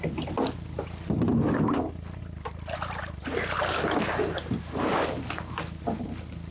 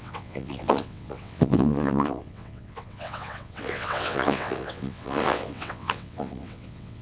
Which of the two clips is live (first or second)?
first